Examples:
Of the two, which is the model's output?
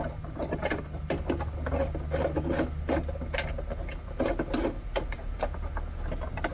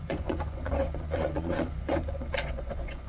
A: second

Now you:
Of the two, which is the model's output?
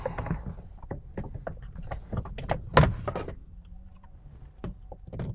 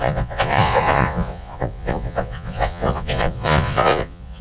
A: second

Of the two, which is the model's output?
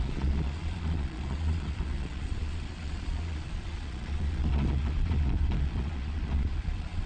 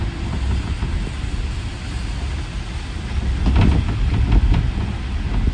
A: first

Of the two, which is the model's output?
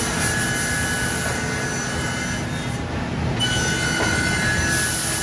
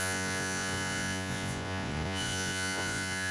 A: second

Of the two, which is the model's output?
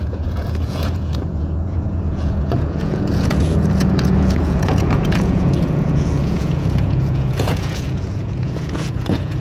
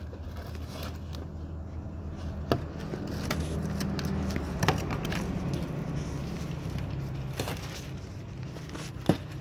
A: first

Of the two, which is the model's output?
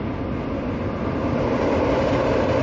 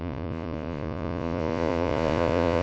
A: second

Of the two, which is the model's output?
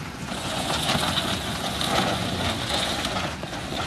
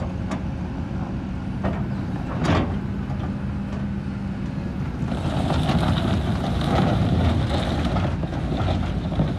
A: first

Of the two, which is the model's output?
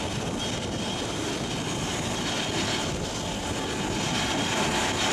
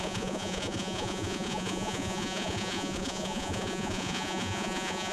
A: second